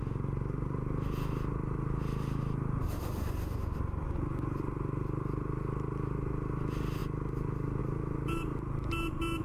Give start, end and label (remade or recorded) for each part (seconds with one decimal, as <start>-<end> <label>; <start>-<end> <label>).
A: 0.0-9.4 recorded